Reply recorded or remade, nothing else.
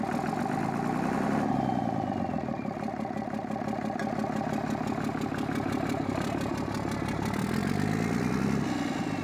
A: recorded